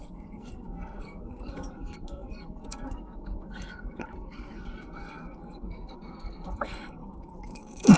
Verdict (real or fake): fake